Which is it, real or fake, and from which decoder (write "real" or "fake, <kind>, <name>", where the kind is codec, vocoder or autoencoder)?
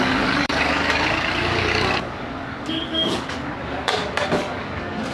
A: fake, codec, DAC